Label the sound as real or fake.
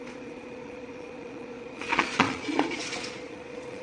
fake